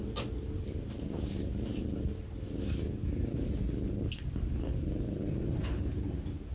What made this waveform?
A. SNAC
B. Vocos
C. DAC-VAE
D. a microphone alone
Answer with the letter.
D